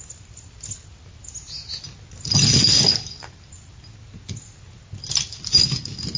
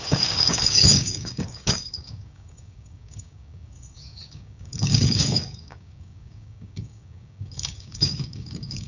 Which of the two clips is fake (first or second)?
second